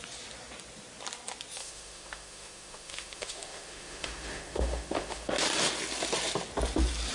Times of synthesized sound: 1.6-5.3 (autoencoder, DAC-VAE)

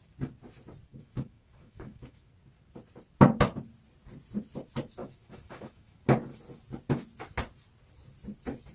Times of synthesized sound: 0.9-2.3 (autoencoder, DAC-VAE); 5.0-6.0

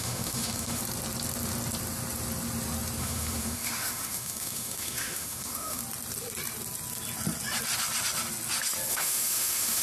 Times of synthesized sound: 0.0-0.8 (autoencoder, DAC-VAE); 3.0-5.8; 8.9-9.8

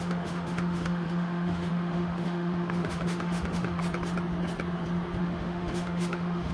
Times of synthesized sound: 0.0-3.8 (autoencoder, DAC-VAE); 5.2-6.5

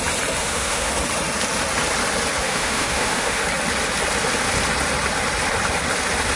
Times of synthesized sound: 0.4-0.9 (autoencoder, DAC-VAE); 2.4-3.4

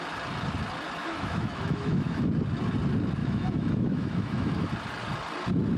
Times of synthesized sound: 1.0-2.3 (autoencoder, DAC-VAE); 3.2-4.7

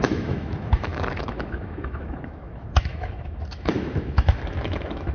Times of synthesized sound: 0.0-5.1 (autoencoder, DAC-VAE)